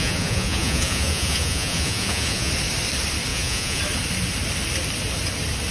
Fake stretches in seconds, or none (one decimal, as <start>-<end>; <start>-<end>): 0.0-2.5; 3.3-3.8

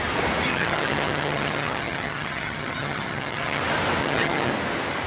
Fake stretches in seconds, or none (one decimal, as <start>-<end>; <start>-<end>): 0.5-3.6; 4.0-4.5

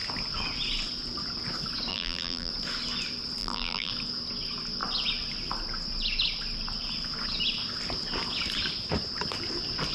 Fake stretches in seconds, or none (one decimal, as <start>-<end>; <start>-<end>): 1.9-2.5; 3.4-3.9

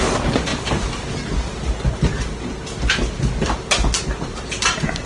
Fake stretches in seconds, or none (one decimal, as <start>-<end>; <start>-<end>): none